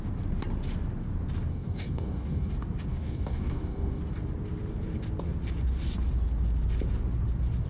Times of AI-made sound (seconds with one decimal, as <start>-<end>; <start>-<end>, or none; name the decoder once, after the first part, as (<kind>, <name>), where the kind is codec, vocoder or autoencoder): 1.5-2.5 (codec, DAC); 2.9-4.0